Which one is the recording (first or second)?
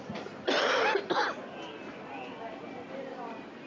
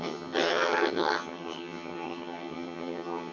first